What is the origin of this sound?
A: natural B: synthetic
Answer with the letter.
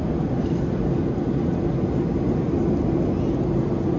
A